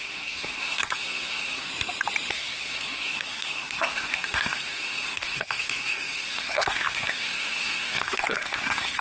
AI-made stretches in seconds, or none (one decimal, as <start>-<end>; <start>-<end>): 0.0-1.7; 2.3-9.0